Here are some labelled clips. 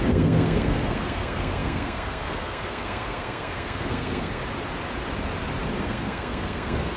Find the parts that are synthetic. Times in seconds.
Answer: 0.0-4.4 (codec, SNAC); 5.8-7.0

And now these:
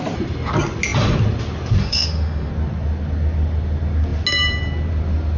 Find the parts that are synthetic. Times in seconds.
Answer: 1.8-2.5 (autoencoder, DAC-VAE)